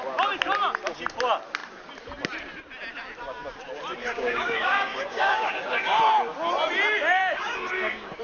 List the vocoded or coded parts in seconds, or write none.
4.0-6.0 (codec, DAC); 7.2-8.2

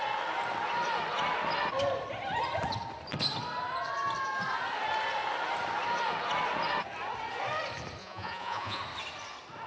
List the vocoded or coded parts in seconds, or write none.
8.0-8.8 (vocoder, Vocos)

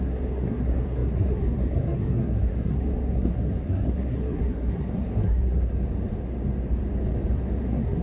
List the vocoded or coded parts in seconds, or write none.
0.0-5.7 (codec, SNAC); 7.6-8.0

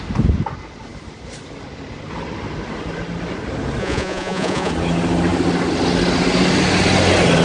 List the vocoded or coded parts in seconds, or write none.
3.8-4.7 (vocoder, Vocos)

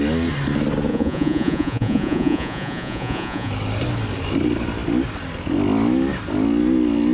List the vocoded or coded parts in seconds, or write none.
0.9-3.5 (vocoder, Vocos)

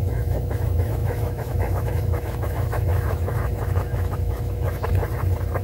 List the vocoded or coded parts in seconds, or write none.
0.0-4.9 (autoencoder, DAC-VAE)